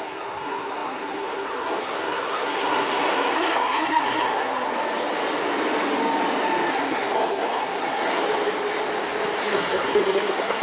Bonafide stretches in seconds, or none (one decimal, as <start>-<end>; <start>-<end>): 4.7-6.7; 8.2-9.4